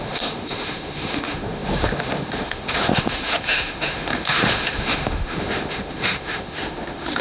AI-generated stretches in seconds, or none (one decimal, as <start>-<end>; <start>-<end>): 0.0-7.2